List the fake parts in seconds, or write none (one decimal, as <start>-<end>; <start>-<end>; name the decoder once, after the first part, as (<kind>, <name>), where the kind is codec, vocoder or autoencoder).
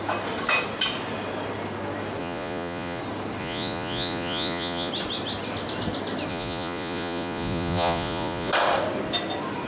2.2-3.0 (vocoder, Vocos); 3.4-4.9; 6.3-8.5